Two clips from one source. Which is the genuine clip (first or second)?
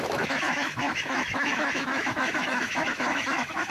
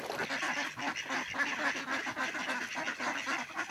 second